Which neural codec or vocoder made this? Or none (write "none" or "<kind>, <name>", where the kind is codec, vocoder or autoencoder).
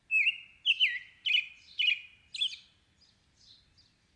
none